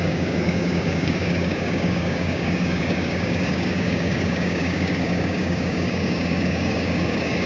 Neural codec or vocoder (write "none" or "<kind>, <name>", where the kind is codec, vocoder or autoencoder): codec, DAC